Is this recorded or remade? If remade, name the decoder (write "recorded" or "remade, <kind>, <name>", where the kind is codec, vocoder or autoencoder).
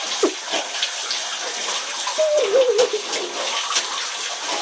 recorded